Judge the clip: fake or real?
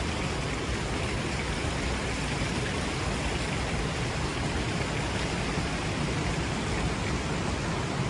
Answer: real